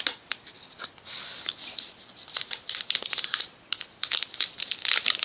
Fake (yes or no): no